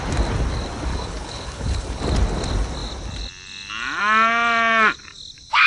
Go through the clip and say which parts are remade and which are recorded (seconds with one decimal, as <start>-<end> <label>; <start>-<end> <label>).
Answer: 0.0-0.9 recorded; 0.9-2.0 remade; 2.0-5.7 recorded